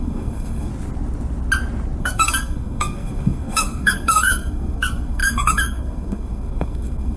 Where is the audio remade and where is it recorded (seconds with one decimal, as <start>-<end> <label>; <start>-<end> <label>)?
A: 0.0-0.7 remade; 0.7-2.0 recorded; 2.0-7.2 remade